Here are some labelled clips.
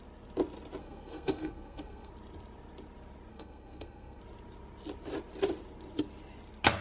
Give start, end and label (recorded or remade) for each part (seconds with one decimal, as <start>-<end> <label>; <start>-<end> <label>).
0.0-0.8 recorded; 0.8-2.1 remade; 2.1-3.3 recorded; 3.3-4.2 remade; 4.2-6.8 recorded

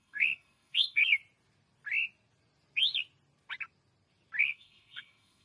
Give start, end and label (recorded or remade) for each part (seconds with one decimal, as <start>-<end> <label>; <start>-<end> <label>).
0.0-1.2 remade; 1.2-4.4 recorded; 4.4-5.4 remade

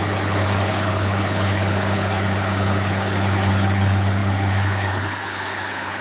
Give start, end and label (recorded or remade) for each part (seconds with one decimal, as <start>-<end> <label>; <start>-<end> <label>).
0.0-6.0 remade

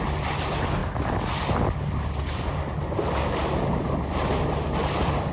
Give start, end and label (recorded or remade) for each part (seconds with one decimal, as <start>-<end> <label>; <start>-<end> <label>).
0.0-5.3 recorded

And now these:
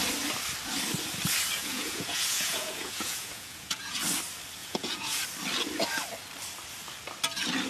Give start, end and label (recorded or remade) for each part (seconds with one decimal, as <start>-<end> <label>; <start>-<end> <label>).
0.0-1.6 recorded; 1.6-4.0 remade; 4.0-4.6 recorded; 4.6-5.2 remade; 5.2-7.7 recorded